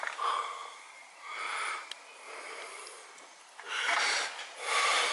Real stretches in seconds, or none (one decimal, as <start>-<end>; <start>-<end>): 0.0-5.1